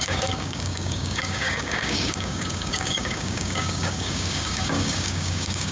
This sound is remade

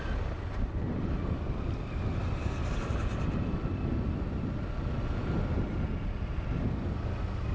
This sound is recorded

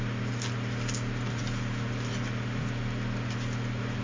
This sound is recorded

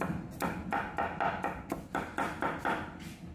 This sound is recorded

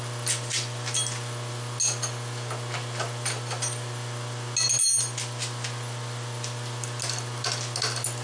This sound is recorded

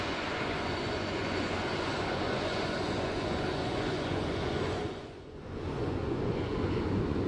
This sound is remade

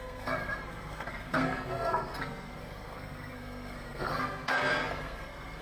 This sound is remade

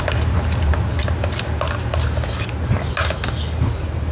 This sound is recorded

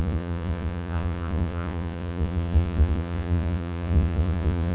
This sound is remade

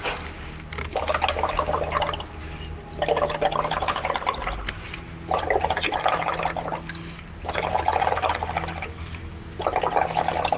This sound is recorded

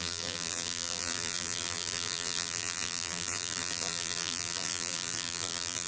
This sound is remade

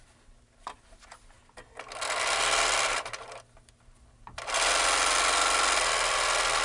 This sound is recorded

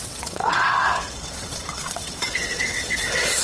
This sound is remade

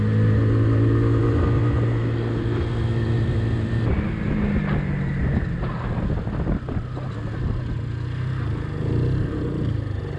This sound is recorded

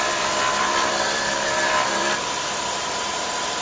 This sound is remade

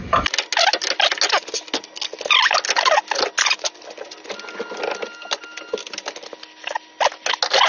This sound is recorded